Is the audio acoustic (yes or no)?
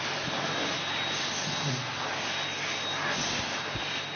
yes